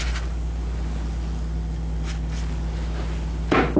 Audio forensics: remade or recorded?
recorded